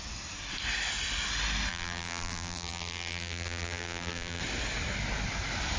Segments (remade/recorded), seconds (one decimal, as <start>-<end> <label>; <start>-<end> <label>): 0.0-1.7 recorded; 1.7-4.4 remade; 4.4-5.8 recorded